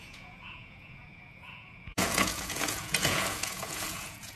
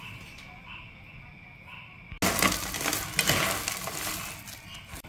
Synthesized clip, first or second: first